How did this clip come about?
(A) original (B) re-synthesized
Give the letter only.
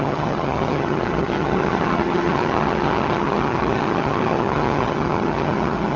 B